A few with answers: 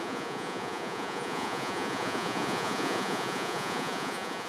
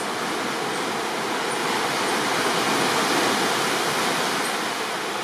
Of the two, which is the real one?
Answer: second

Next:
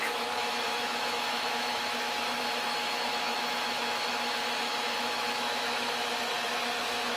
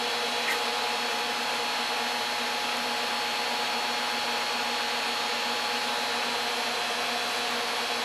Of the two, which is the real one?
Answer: second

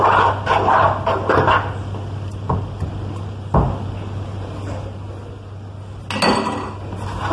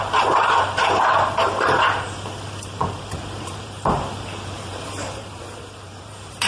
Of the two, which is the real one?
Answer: first